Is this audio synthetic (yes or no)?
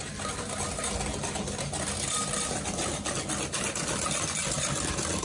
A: no